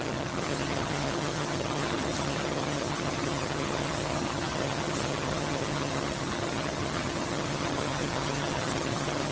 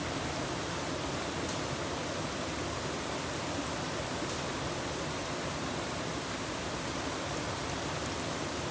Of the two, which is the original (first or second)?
second